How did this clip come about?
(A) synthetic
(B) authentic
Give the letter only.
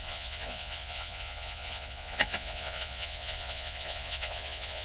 A